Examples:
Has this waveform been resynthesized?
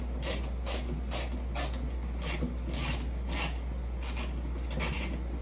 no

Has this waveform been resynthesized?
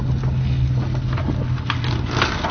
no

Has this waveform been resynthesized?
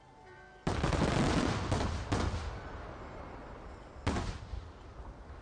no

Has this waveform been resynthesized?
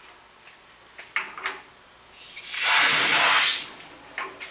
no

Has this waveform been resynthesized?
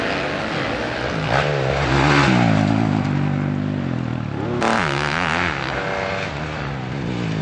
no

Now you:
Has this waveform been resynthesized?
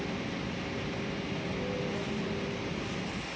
no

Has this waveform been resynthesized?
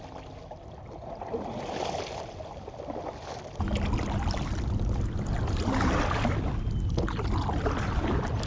no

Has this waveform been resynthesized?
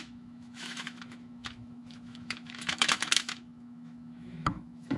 yes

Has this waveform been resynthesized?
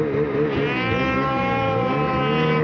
no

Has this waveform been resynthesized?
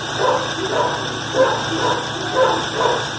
no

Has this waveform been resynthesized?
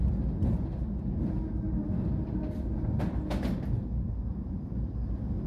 no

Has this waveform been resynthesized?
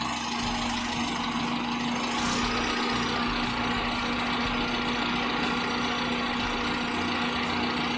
no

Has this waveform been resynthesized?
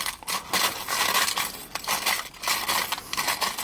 no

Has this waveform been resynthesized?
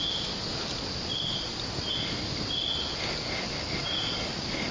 no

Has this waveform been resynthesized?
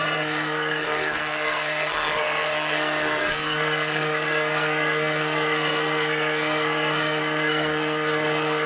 yes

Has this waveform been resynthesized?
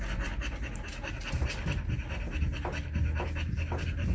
no